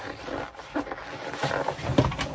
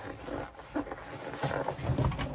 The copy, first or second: first